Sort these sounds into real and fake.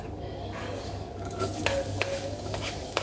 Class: fake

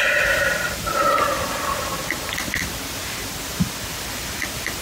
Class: real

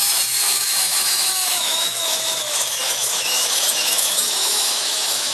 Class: fake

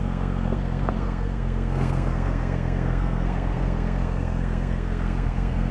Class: fake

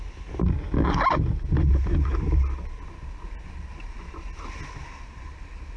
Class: real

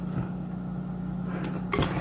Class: real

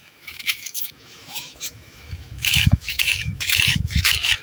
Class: fake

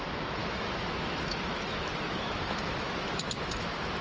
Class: fake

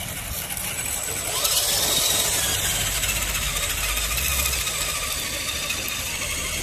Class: real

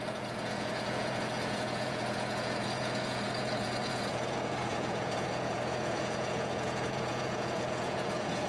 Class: fake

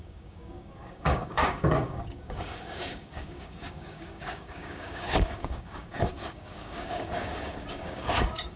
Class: fake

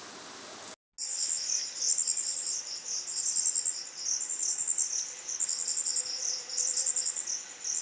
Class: real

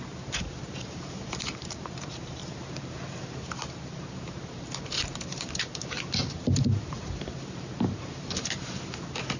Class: fake